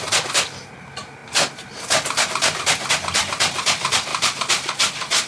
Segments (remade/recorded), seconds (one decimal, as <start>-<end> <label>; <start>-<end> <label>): 0.0-5.3 recorded